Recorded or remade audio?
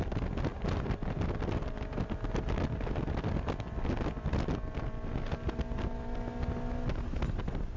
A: recorded